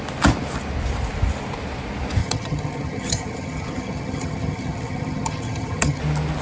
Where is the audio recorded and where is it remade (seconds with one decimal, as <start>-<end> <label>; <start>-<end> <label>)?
0.0-2.2 recorded; 2.2-6.0 remade; 6.0-6.4 recorded